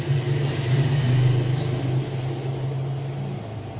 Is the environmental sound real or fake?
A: real